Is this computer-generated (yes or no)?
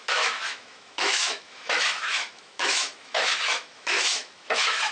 yes